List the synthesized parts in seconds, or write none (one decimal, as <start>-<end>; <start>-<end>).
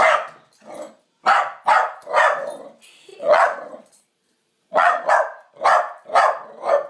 3.1-5.1